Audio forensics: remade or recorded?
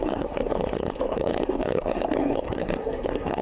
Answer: remade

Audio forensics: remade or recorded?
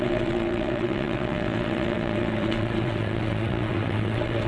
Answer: remade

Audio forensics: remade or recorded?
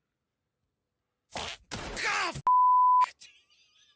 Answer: recorded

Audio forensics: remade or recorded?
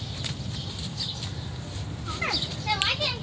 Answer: recorded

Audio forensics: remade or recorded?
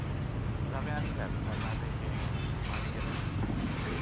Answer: recorded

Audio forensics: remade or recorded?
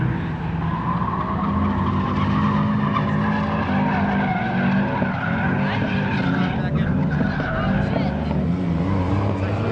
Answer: recorded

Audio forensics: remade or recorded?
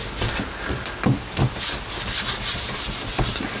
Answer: recorded